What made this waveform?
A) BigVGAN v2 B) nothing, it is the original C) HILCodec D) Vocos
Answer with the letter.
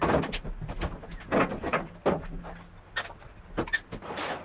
B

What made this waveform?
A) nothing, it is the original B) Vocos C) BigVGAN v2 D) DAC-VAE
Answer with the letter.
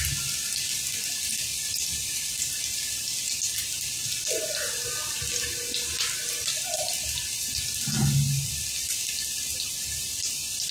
A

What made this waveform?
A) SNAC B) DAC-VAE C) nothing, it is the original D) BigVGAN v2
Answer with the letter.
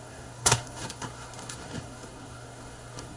A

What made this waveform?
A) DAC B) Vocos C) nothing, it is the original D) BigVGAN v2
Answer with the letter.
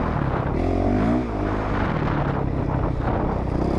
C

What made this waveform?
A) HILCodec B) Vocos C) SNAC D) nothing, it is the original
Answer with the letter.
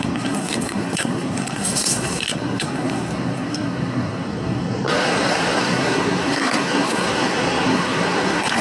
C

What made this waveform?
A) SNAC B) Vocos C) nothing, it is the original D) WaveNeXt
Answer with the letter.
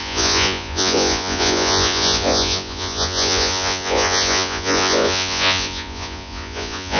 B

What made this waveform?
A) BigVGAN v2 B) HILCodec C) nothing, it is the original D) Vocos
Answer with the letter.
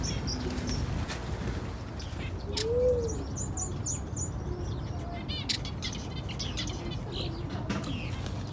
C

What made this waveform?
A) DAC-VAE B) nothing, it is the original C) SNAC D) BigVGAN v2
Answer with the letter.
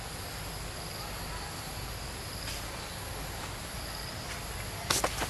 B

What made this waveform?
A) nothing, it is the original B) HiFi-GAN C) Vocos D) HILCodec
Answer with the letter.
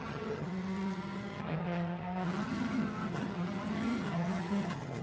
B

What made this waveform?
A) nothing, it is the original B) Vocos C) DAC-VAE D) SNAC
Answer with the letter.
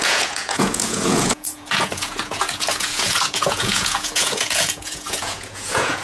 B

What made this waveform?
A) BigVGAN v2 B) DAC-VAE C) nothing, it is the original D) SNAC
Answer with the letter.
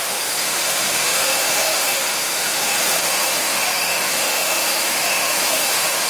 B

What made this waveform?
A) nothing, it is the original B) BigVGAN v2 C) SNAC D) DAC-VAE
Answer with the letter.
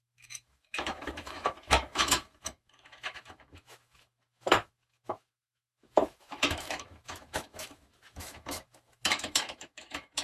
D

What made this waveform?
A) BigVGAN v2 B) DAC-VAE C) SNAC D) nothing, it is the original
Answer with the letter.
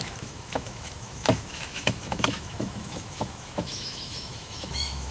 B